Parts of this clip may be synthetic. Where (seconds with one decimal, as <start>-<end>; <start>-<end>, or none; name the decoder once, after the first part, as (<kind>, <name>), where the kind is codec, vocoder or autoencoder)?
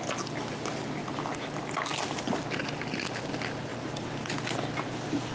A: 1.0-1.5 (vocoder, BigVGAN v2); 3.7-4.3